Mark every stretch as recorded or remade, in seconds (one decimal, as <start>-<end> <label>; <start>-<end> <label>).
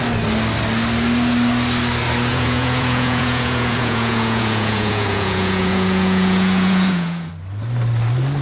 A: 0.0-2.3 recorded; 2.3-7.3 remade; 7.3-8.4 recorded